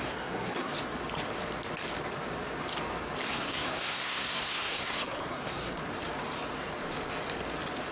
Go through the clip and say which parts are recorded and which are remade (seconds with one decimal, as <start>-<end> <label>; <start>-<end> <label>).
0.0-0.7 remade; 0.7-3.3 recorded; 3.3-5.8 remade; 5.8-7.9 recorded